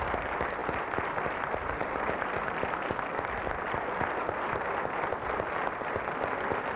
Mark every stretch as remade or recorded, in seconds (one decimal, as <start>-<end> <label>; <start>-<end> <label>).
0.0-6.8 recorded